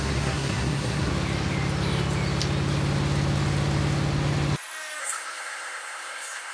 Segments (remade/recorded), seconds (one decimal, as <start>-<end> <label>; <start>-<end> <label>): 0.0-1.1 remade; 1.1-5.0 recorded; 5.0-6.5 remade